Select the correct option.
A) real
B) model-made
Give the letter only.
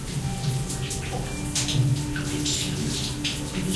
A